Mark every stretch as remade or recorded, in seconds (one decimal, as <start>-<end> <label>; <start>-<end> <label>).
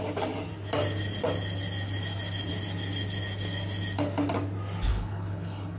0.0-4.9 recorded; 4.9-5.8 remade